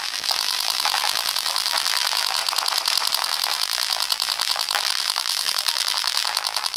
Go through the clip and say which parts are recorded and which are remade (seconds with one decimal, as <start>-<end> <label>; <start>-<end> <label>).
0.0-2.4 remade; 2.4-3.1 recorded; 3.1-6.8 remade